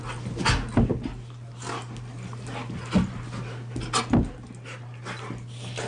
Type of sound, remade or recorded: recorded